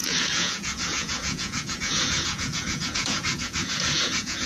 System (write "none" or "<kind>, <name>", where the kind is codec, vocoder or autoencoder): vocoder, Vocos